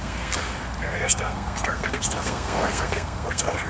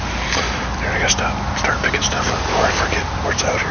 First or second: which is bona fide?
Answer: second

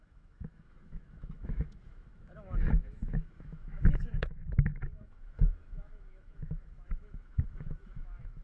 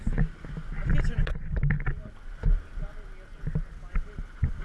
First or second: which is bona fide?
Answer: second